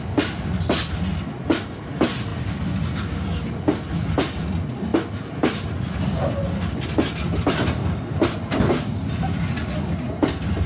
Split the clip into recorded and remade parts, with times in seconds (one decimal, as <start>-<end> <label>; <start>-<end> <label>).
0.0-10.7 recorded